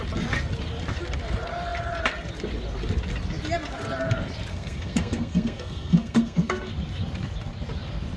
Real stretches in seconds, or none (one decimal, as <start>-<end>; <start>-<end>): 0.0-4.5; 6.7-8.2